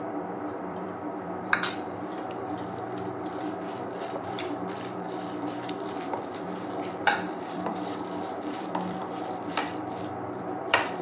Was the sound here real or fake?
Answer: fake